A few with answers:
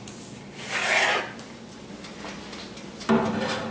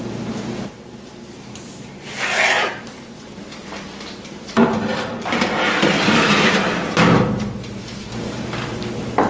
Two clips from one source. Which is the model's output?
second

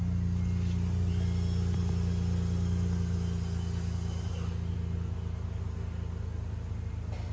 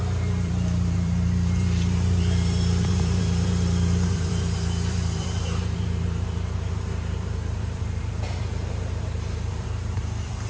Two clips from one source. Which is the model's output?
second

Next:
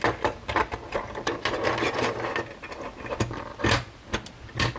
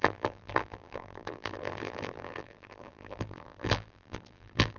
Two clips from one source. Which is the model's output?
second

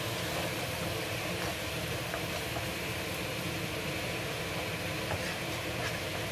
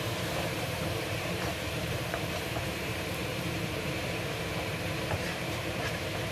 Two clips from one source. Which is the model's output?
second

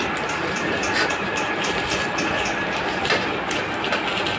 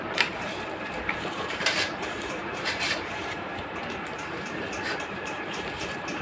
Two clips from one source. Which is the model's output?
second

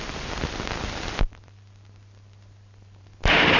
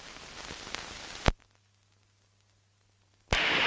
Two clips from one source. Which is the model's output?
first